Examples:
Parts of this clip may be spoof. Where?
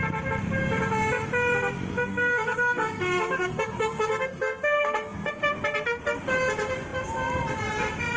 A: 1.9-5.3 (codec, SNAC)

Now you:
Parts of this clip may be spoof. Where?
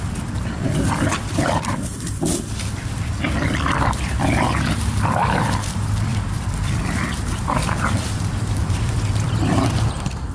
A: 0.0-10.3 (vocoder, BigVGAN v2)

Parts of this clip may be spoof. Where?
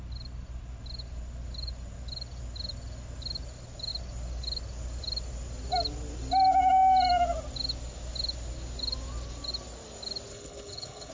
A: 10.3-11.1 (codec, HILCodec)